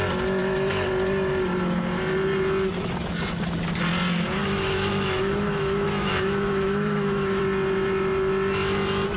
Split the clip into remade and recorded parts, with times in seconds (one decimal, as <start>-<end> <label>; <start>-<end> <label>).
0.0-0.4 recorded; 0.4-0.9 remade; 0.9-4.4 recorded; 4.4-7.4 remade; 7.4-9.2 recorded